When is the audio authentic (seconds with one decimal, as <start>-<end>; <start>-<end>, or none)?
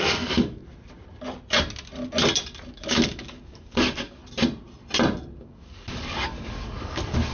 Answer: 0.6-2.7; 4.2-5.4